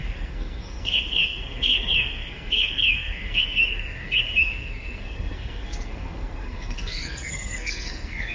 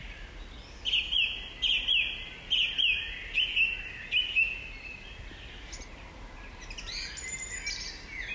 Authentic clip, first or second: second